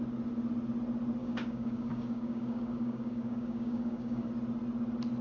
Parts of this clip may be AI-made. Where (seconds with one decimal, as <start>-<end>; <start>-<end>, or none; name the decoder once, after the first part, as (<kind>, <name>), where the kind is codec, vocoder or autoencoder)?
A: 1.2-4.3 (codec, DAC)